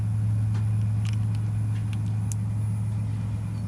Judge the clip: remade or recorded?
recorded